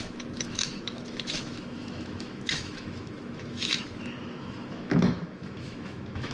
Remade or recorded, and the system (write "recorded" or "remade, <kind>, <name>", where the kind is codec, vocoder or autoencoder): remade, autoencoder, DAC-VAE